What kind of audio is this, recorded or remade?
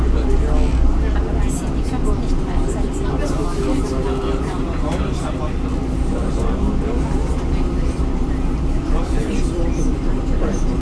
recorded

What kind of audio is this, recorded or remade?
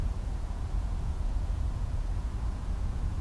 remade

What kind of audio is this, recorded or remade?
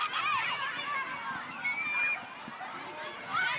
recorded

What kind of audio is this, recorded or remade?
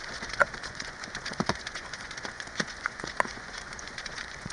remade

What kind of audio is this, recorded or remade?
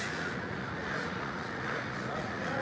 remade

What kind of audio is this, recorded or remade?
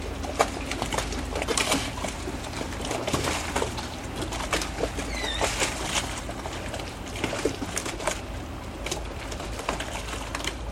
recorded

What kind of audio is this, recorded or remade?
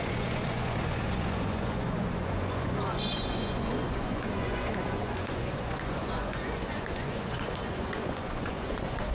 remade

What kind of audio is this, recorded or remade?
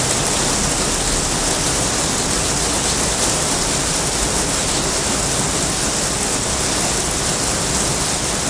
recorded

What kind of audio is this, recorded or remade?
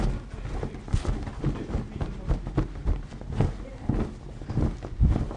recorded